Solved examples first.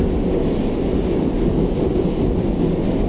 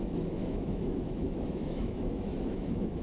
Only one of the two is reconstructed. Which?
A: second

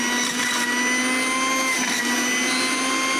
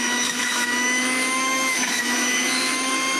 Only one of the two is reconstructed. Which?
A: second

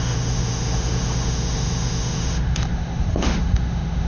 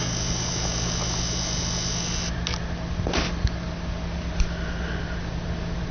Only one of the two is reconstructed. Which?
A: first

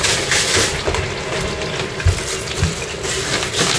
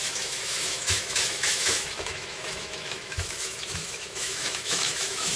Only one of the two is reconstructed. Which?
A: second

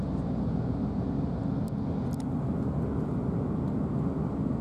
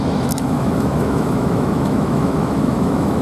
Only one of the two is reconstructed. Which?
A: second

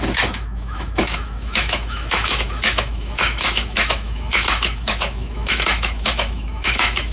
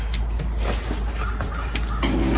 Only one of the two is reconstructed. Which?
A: first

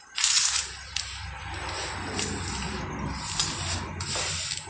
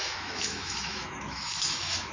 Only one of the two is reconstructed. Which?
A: second